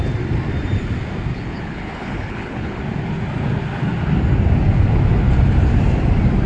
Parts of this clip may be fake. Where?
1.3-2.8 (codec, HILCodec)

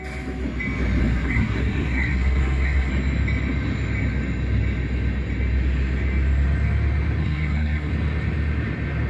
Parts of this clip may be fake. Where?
1.0-2.9 (codec, SNAC); 7.2-7.9